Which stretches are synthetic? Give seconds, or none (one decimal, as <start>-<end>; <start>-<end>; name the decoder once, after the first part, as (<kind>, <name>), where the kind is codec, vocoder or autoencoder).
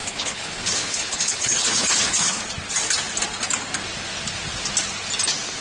0.0-2.4 (codec, HILCodec)